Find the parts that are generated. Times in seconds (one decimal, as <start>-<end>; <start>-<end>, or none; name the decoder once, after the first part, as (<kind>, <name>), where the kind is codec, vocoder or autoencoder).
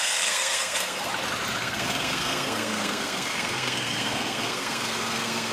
0.0-1.1 (codec, SNAC); 1.6-5.5